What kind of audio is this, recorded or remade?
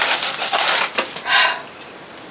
recorded